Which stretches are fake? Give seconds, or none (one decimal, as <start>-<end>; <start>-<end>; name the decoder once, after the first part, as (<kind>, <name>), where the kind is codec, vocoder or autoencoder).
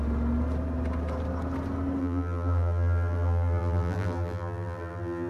2.0-5.3 (vocoder, BigVGAN v2)